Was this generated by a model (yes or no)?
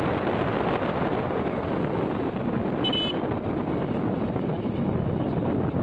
no